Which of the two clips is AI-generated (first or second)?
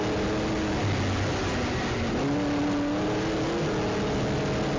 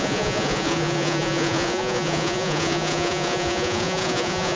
second